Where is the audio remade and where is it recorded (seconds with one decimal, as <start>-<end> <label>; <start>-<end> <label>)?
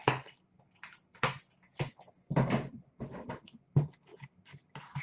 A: 0.0-5.0 recorded